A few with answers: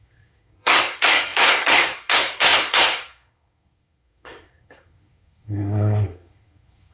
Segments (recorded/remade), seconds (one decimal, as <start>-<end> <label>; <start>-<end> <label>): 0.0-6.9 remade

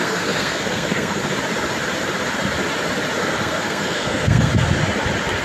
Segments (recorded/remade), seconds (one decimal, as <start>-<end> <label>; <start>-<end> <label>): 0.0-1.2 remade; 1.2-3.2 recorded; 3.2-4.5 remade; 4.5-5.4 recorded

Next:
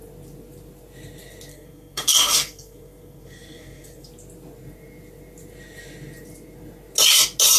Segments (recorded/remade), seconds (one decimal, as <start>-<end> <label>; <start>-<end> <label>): 0.0-1.5 recorded; 1.5-4.1 remade; 4.1-7.6 recorded

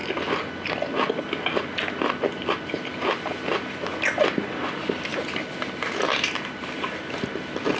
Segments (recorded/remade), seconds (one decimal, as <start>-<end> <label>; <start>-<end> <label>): 0.0-7.8 recorded